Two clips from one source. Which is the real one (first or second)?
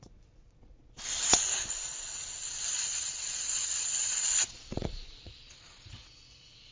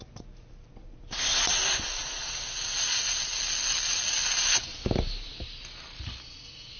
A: second